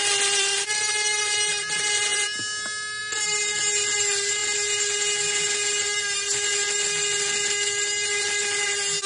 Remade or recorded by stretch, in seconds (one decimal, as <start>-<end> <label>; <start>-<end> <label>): 0.0-9.1 recorded